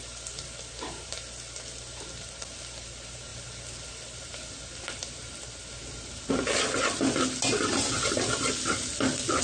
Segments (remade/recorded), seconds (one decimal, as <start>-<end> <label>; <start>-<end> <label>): 0.0-9.4 recorded